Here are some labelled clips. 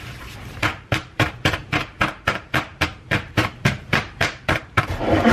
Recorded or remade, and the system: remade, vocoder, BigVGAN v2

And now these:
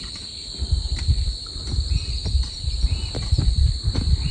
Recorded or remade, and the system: remade, vocoder, BigVGAN v2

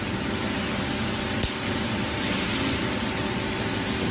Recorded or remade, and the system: recorded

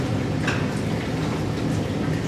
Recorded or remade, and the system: recorded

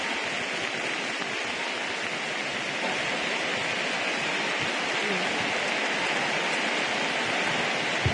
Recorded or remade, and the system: recorded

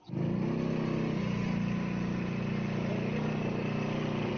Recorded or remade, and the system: recorded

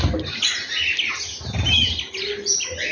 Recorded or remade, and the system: recorded